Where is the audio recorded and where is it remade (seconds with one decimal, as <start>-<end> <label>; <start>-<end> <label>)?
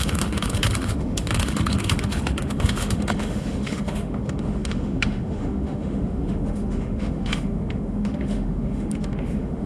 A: 0.0-9.7 remade